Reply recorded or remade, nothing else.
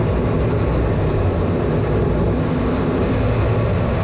recorded